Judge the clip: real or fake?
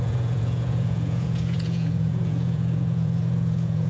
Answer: fake